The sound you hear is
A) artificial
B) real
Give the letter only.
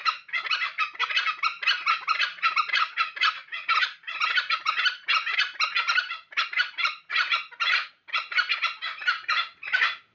B